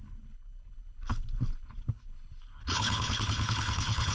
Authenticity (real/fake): fake